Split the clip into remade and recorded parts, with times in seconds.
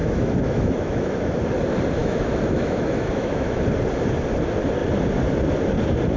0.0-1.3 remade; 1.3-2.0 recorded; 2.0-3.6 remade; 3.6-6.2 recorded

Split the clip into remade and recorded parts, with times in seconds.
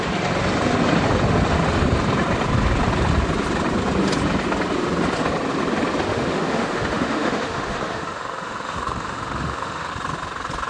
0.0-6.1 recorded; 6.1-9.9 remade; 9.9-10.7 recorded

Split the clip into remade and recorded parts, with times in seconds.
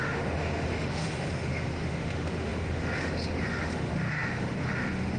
0.0-5.2 remade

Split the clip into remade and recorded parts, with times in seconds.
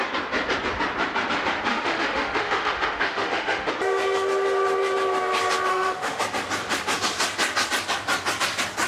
0.0-1.7 recorded; 1.7-3.7 remade; 3.7-5.7 recorded; 5.7-6.2 remade; 6.2-8.9 recorded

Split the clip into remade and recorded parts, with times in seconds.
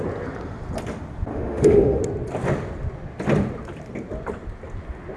0.0-1.3 recorded; 1.3-2.0 remade; 2.0-5.2 recorded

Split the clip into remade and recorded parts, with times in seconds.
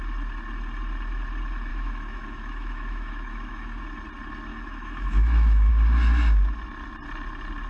0.0-1.7 recorded; 1.7-3.8 remade; 3.8-4.5 recorded; 4.5-5.7 remade; 5.7-7.7 recorded